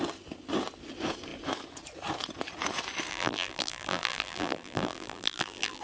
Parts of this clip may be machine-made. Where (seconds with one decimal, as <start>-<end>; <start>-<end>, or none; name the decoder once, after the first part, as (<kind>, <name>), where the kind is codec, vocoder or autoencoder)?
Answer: 3.1-5.8 (vocoder, BigVGAN v2)